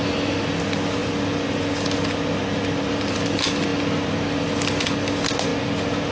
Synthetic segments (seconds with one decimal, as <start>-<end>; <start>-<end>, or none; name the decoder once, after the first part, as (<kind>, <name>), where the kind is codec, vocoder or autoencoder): none

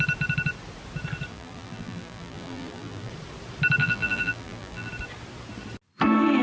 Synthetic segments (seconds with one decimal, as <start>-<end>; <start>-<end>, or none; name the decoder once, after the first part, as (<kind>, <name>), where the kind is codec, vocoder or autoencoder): 1.3-3.1 (vocoder, BigVGAN v2); 3.8-4.9